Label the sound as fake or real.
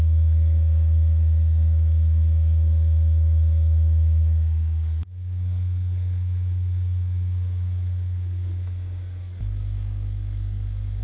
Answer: fake